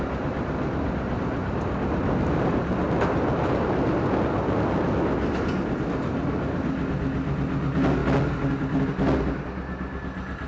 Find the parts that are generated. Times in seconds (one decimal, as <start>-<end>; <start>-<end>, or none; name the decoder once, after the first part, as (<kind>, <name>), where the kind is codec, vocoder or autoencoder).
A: none